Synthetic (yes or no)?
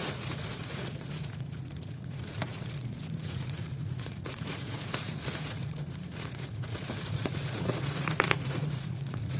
yes